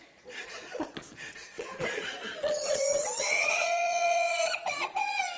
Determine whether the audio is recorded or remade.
remade